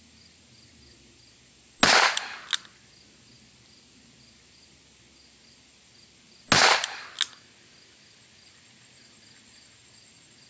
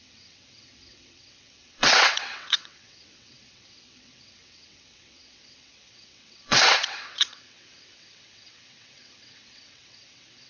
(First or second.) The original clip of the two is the first